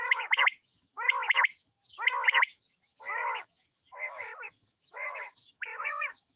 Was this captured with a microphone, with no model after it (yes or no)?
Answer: no